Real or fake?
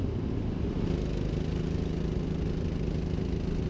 real